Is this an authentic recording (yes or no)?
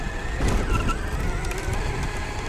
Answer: yes